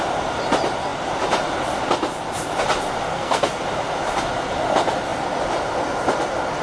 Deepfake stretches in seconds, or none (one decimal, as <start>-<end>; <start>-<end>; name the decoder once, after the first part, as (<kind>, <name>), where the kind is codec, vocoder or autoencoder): 3.1-3.6 (codec, SNAC)